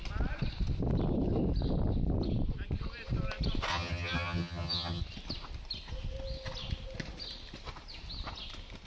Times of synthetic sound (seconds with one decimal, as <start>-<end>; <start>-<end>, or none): 3.7-5.0